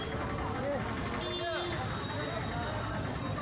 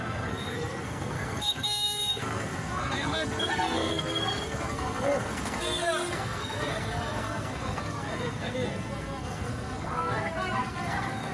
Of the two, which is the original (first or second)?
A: first